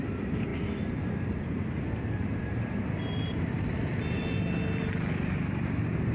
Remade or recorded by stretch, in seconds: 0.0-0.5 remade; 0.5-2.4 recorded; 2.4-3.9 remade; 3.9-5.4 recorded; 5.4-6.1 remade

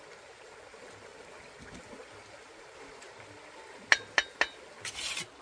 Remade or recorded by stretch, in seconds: 0.0-5.4 recorded

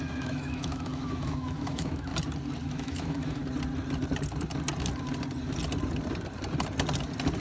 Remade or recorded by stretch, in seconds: 0.0-2.1 remade; 2.1-2.7 recorded; 2.7-3.4 remade; 3.4-7.4 recorded

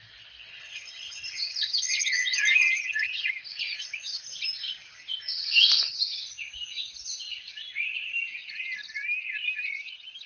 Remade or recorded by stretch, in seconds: 0.0-0.5 recorded; 0.5-3.3 remade; 3.3-10.3 recorded

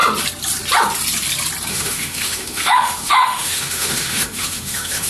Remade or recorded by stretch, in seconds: 0.0-1.7 recorded; 1.7-5.1 remade

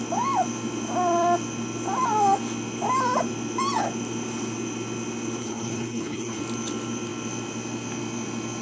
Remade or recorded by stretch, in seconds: 0.0-5.4 recorded; 5.4-6.4 remade; 6.4-8.6 recorded

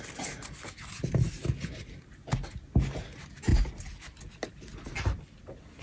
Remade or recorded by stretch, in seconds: 0.0-5.8 recorded